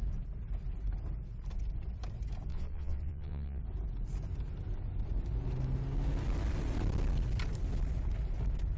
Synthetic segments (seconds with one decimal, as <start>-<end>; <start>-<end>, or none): 2.5-3.6